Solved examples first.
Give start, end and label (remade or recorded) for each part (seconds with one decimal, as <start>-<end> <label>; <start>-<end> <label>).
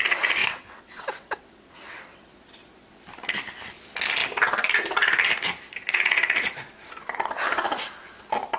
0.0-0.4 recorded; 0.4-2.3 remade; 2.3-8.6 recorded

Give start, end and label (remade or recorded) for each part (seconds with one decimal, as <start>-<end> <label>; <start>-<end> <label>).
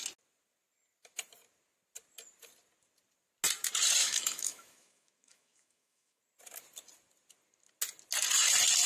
0.0-4.0 recorded; 4.0-6.2 remade; 6.2-8.9 recorded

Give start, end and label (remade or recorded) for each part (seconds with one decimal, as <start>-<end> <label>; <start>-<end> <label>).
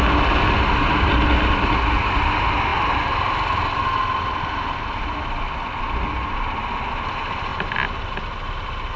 0.0-9.0 recorded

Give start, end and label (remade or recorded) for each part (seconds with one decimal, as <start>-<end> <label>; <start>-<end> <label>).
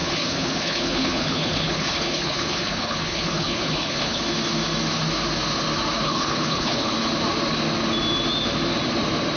0.0-4.2 remade; 4.2-6.0 recorded; 6.0-6.9 remade; 6.9-9.4 recorded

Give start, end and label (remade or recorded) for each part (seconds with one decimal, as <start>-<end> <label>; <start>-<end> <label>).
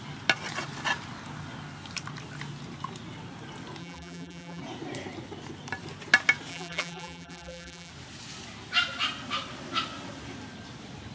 0.0-3.8 recorded; 3.8-4.6 remade; 4.6-6.5 recorded; 6.5-7.9 remade; 7.9-11.1 recorded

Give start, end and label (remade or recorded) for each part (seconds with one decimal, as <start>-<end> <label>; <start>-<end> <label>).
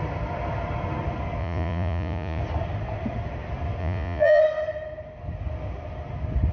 0.0-1.4 recorded; 1.4-2.4 remade; 2.4-3.8 recorded; 3.8-4.4 remade; 4.4-6.5 recorded